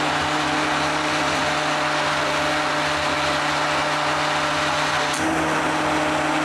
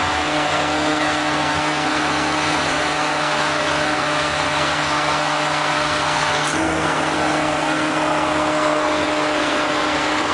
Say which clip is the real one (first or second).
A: first